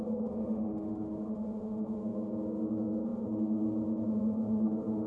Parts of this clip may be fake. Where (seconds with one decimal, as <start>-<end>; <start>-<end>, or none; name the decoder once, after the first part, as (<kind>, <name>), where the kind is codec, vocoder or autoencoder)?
0.0-5.1 (autoencoder, DAC-VAE)